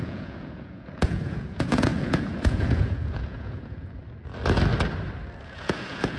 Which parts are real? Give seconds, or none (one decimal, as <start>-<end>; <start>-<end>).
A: 4.0-5.4